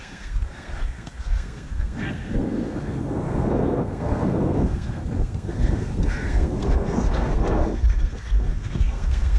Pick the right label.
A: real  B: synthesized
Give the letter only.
B